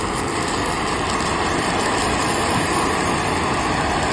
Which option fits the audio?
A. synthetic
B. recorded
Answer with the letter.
B